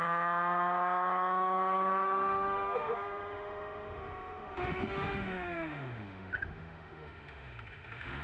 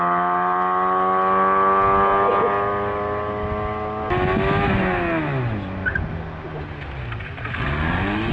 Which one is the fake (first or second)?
first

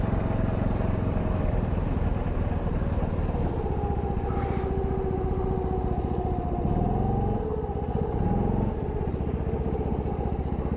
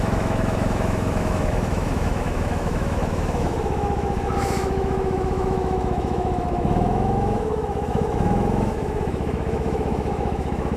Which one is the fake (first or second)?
second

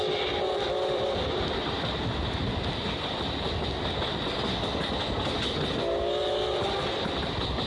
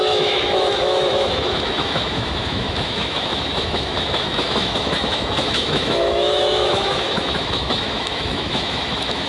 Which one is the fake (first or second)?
second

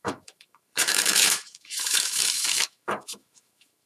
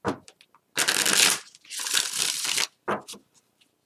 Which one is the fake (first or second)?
first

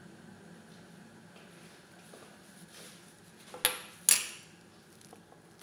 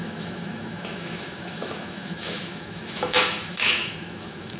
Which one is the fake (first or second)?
second